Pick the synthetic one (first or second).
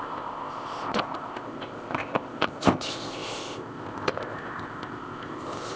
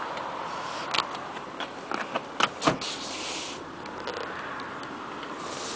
first